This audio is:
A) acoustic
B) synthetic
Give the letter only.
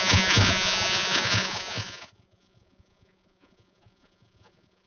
B